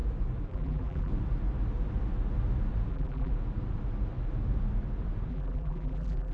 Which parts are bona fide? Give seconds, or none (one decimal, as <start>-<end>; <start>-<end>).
0.0-0.5; 1.1-2.9; 3.3-5.3